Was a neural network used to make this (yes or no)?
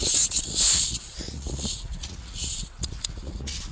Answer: yes